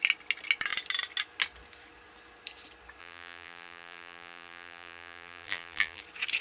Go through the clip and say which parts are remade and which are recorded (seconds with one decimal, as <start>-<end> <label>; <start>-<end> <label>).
0.0-3.0 recorded; 3.0-6.0 remade; 6.0-6.4 recorded